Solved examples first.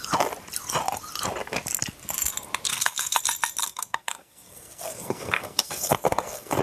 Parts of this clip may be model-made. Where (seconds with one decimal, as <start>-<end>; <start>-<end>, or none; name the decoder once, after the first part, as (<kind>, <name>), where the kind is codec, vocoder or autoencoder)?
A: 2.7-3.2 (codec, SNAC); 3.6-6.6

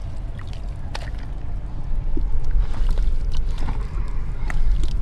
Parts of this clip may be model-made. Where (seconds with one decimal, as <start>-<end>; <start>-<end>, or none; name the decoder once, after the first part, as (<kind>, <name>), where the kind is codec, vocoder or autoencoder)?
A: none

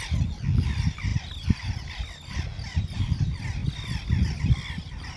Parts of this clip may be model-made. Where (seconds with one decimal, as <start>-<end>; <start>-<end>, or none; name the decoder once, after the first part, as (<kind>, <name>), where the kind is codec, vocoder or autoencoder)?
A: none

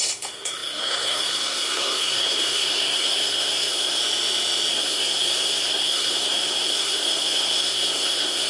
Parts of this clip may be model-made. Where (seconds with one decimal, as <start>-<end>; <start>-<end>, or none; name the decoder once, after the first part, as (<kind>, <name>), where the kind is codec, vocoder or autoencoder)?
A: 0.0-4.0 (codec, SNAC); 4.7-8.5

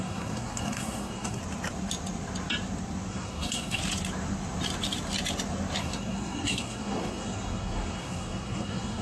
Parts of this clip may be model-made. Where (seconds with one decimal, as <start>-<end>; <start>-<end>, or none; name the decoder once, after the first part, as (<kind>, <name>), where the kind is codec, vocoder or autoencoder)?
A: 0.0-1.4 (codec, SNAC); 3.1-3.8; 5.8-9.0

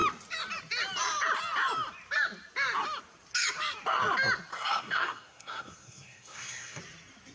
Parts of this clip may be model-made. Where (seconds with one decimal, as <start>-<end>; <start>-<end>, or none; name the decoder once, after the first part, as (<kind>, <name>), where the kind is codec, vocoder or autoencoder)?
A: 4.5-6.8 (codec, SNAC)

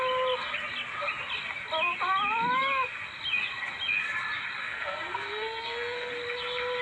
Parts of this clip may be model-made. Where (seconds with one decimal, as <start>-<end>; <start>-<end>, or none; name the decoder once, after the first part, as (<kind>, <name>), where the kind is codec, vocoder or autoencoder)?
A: 4.6-6.1 (codec, SNAC)